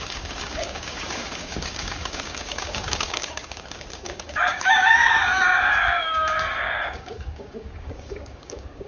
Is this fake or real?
fake